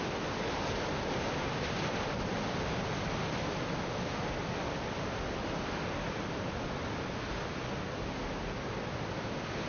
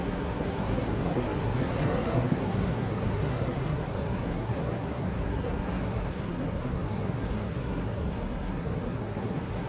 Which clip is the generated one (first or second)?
second